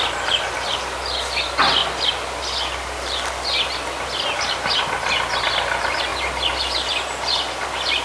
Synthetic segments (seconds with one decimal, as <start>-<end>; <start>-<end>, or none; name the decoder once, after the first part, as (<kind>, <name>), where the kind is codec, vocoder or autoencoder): none